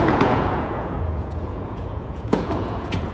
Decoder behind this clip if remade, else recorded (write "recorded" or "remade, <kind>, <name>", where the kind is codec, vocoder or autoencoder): remade, vocoder, Vocos